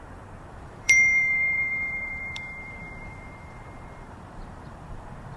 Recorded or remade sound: remade